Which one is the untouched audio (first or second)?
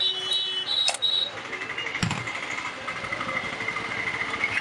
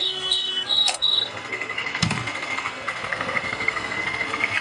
first